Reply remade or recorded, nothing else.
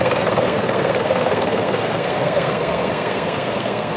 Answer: remade